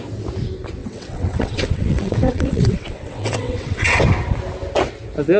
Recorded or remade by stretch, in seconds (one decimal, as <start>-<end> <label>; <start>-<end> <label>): 0.0-0.8 recorded; 0.8-4.0 remade; 4.0-5.4 recorded